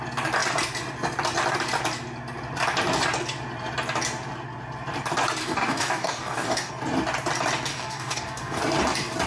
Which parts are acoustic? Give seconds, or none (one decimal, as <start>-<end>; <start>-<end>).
0.0-5.4; 6.7-7.7; 8.6-9.3